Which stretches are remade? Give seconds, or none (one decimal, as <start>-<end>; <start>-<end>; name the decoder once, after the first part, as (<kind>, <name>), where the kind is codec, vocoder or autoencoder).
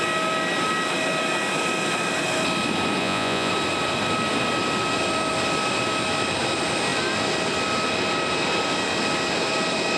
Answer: 3.0-3.5 (vocoder, Vocos)